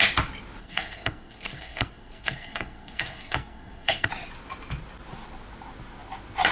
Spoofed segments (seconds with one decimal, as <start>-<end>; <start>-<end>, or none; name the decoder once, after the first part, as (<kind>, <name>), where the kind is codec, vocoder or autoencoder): 0.6-4.1 (codec, SNAC)